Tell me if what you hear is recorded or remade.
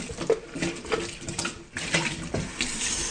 recorded